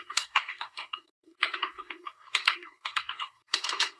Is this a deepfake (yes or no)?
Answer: yes